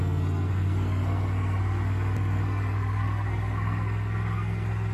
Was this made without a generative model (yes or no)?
no